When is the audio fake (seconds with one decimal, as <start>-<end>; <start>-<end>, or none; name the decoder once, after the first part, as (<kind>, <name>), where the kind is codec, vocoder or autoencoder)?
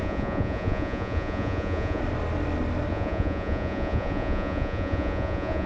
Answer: 0.0-2.0 (vocoder, Vocos); 2.9-5.7